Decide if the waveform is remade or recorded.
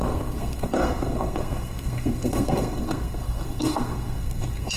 remade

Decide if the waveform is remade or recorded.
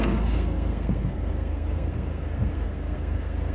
remade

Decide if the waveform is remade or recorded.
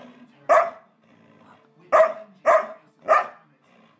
recorded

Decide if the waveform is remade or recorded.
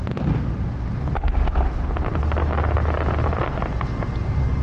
recorded